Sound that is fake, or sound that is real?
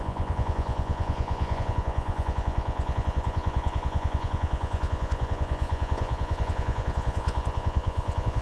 fake